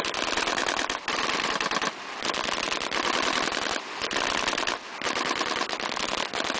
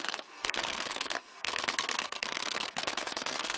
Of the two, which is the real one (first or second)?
first